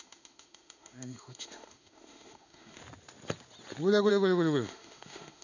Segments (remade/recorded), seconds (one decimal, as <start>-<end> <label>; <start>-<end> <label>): 0.0-2.8 remade; 2.8-4.1 recorded; 4.1-5.4 remade

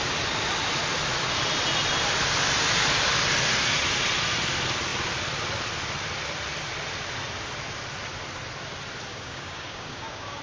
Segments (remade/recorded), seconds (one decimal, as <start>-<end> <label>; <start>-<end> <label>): 0.0-9.1 recorded; 9.1-10.4 remade